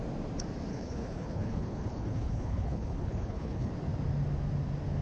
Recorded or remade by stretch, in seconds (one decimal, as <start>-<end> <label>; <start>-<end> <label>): 0.0-0.7 recorded; 0.7-3.7 remade; 3.7-5.0 recorded